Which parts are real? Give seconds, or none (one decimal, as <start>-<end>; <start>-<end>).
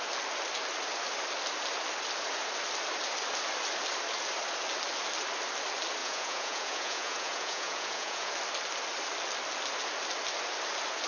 0.0-6.0; 8.3-11.1